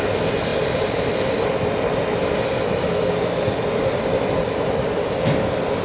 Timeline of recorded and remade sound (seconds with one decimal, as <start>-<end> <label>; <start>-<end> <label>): 0.0-5.8 recorded